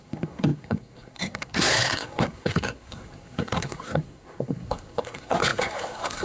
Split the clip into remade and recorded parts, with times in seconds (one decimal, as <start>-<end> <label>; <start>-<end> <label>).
0.0-6.2 remade